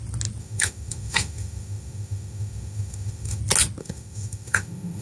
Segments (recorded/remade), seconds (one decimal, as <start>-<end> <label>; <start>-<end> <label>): 0.0-0.4 recorded; 0.4-3.4 remade; 3.4-3.8 recorded; 3.8-5.0 remade